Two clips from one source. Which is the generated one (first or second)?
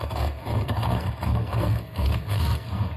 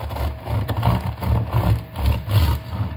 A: first